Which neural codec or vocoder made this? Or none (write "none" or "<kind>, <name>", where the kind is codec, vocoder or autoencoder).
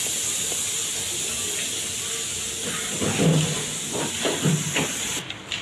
none